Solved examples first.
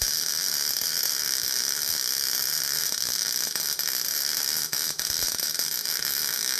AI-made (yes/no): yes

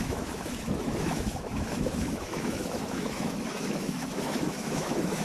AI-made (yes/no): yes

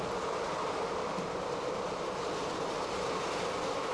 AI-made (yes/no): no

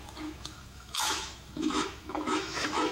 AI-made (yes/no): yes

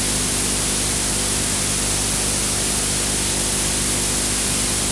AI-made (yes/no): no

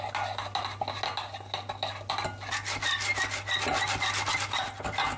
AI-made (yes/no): no